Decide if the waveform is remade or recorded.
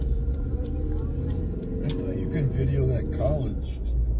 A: recorded